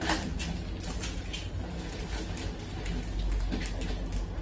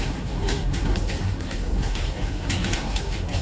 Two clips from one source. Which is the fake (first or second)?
second